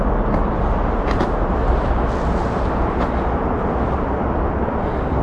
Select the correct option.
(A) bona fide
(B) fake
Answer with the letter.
A